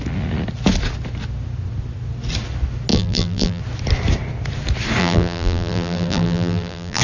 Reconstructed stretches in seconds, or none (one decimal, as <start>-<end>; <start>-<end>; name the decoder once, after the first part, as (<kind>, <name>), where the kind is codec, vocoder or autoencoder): 2.9-3.6 (vocoder, BigVGAN v2); 5.0-7.0